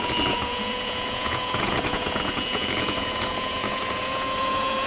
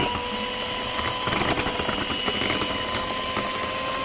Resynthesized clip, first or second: first